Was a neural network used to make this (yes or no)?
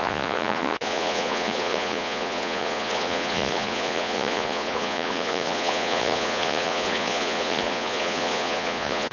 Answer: yes